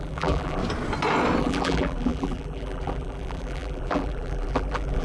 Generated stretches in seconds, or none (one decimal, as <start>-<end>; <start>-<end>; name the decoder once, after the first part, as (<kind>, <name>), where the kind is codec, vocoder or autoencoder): 0.0-0.6 (vocoder, BigVGAN v2); 1.4-5.0